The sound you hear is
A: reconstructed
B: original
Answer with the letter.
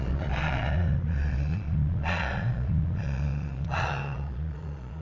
A